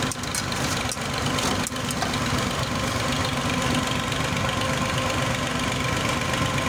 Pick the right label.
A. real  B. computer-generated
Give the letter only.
A